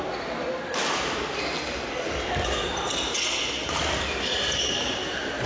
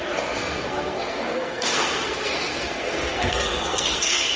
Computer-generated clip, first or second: second